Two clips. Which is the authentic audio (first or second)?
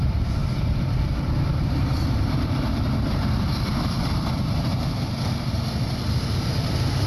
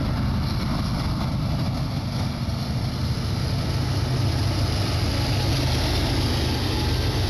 second